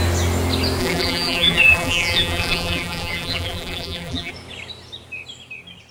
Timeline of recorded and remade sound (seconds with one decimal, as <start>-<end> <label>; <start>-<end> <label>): 0.0-0.8 recorded; 0.8-4.3 remade; 4.3-5.9 recorded